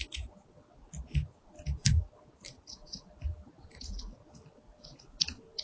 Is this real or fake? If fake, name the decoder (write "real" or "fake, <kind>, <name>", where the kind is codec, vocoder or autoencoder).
real